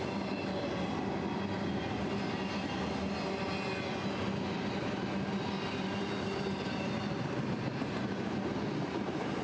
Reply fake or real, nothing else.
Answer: real